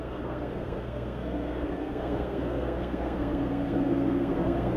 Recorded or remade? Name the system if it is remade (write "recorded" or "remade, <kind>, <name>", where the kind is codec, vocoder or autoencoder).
remade, codec, SNAC